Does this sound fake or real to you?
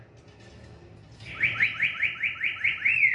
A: real